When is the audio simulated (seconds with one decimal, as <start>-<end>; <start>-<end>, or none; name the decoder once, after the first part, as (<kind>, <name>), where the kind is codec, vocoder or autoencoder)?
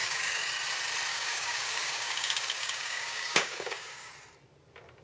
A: 0.0-0.5 (codec, DAC); 1.1-4.1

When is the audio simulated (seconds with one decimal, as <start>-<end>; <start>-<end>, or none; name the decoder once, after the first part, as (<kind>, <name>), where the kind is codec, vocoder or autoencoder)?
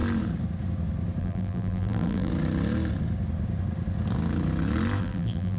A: 1.2-2.3 (vocoder, BigVGAN v2); 5.0-5.6